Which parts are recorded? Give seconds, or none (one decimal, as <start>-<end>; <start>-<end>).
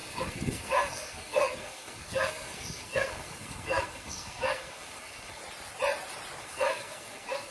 5.4-6.4